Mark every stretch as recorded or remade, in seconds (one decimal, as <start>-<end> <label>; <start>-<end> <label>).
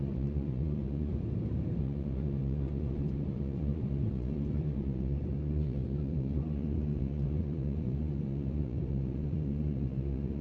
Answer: 0.0-1.1 remade; 1.1-1.8 recorded; 1.8-10.4 remade